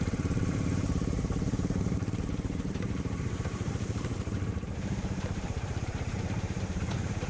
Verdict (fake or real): fake